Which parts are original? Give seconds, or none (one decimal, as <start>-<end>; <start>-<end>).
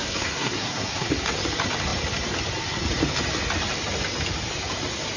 1.1-5.2